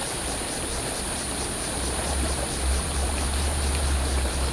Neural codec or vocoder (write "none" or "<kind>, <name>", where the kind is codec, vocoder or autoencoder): vocoder, BigVGAN v2